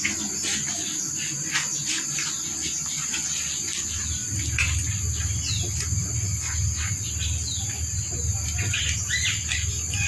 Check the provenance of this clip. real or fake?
real